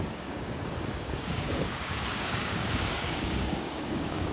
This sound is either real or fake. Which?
fake